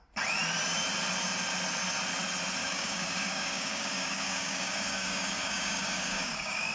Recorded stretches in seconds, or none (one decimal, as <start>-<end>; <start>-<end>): 0.0-2.6